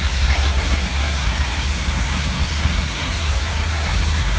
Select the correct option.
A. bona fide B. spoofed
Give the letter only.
B